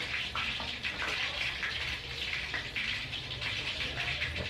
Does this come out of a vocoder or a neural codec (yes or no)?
no